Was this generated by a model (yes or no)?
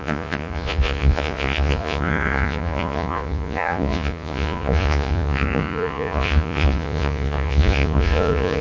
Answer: yes